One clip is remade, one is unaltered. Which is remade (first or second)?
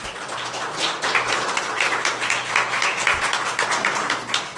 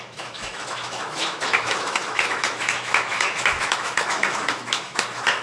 second